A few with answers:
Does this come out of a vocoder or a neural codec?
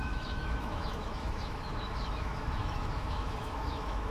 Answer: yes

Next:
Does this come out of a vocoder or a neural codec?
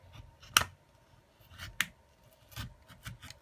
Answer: no